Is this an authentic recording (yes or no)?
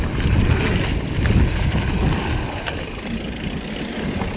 yes